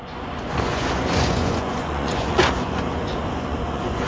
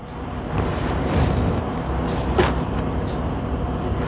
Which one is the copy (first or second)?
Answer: first